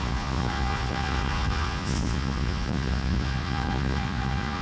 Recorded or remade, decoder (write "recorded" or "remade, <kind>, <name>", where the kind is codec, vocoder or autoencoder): remade, vocoder, Vocos